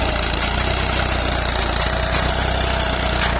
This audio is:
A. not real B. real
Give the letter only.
B